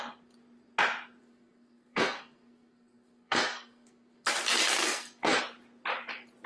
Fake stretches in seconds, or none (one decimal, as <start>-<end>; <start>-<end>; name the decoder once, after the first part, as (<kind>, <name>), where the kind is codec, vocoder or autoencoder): 1.2-4.3 (codec, SNAC); 4.8-5.4

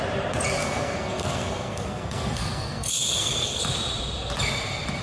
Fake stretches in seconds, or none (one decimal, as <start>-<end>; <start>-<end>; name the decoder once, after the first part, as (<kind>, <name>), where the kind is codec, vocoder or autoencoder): 0.6-3.6 (codec, SNAC)